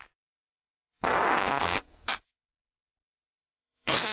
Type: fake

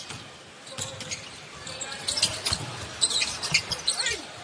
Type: real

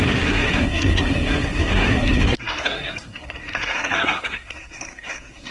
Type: fake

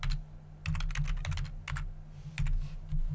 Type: real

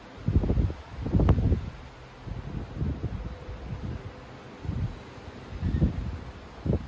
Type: real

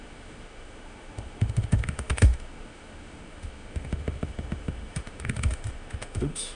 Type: fake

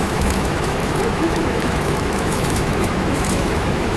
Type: fake